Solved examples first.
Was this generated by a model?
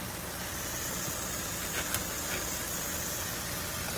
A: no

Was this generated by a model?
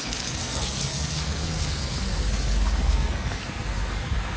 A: yes